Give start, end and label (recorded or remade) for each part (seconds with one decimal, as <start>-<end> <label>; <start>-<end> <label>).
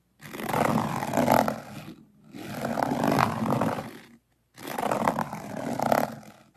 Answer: 0.0-1.9 recorded; 1.9-5.9 remade; 5.9-6.6 recorded